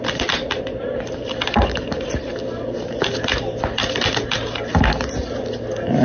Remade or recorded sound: recorded